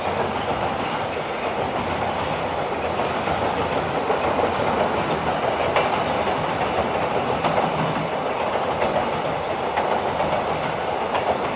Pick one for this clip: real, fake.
real